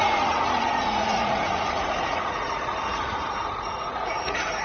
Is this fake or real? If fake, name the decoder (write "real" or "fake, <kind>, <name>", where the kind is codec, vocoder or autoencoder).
fake, vocoder, Vocos